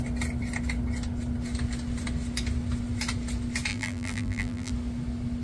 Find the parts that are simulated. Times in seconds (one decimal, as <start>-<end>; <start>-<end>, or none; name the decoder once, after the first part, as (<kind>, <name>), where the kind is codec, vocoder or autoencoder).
3.7-4.7 (vocoder, BigVGAN v2)